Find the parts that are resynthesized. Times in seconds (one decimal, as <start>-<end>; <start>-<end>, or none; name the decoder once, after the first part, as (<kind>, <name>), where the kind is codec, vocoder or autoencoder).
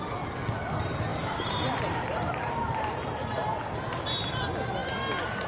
1.1-3.3 (vocoder, BigVGAN v2)